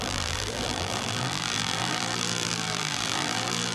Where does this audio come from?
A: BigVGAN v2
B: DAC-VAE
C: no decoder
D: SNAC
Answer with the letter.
A